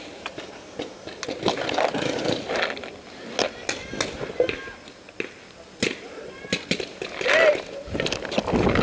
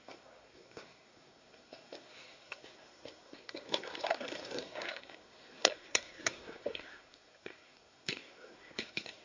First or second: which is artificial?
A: second